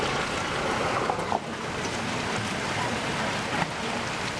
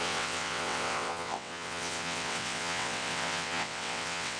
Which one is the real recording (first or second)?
first